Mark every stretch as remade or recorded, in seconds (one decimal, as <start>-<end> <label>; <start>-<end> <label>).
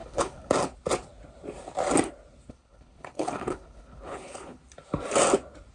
0.0-0.5 remade; 0.5-2.5 recorded; 2.5-4.6 remade; 4.6-5.7 recorded